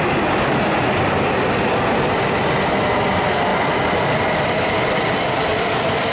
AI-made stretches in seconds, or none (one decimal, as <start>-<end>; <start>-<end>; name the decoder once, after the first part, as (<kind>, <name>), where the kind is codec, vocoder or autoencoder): none